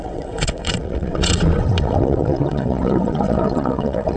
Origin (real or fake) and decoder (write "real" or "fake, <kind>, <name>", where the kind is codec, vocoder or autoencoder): fake, vocoder, WaveNeXt